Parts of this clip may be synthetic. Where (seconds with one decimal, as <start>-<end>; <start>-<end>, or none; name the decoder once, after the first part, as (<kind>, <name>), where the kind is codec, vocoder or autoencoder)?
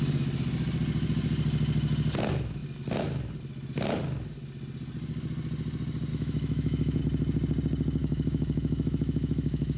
6.1-7.0 (autoencoder, DAC-VAE); 8.0-9.8